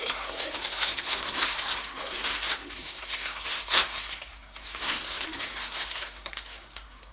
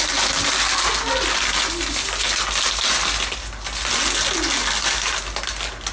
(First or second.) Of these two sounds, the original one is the second